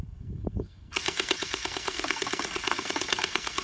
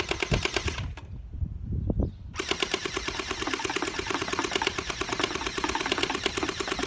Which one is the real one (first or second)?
second